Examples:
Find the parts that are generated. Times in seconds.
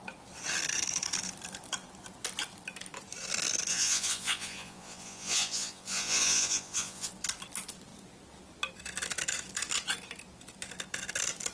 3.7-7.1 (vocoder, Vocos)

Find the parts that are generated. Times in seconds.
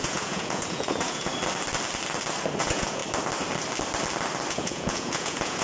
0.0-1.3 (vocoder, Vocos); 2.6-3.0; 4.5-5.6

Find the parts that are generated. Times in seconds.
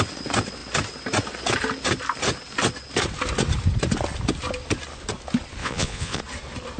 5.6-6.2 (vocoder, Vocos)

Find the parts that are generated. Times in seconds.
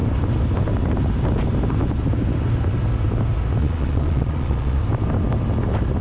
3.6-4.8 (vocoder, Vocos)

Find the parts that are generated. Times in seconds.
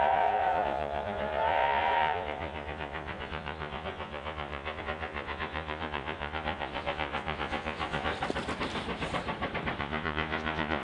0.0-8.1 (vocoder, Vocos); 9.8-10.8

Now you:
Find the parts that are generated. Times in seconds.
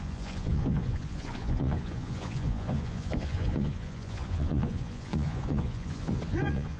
0.0-6.8 (vocoder, Vocos)